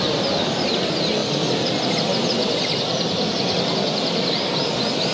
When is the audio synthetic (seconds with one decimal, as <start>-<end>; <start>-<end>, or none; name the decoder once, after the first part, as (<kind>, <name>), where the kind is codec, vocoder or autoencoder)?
none